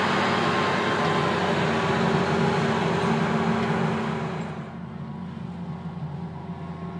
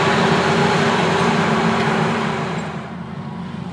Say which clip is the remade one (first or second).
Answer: second